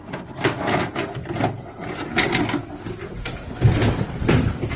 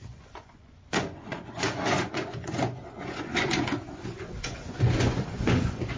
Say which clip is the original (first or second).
first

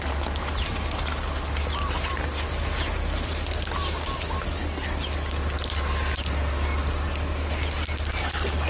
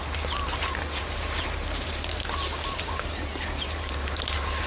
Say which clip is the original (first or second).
first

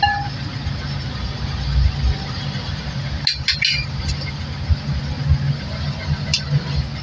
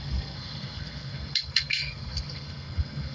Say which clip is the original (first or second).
first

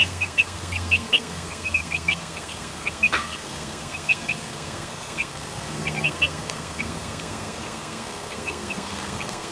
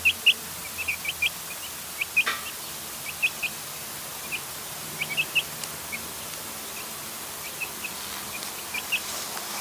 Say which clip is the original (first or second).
second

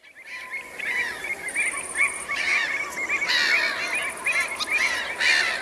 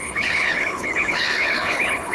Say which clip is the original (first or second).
first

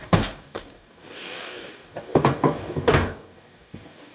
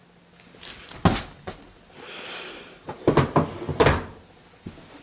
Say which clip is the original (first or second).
second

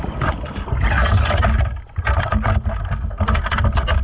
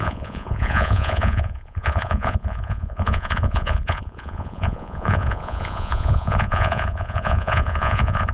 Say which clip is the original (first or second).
first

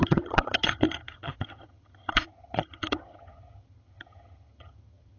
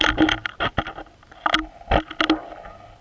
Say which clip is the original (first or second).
second